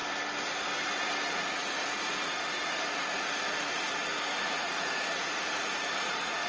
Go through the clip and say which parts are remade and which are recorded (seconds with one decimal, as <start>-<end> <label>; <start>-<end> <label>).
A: 0.0-1.3 recorded; 1.3-6.5 remade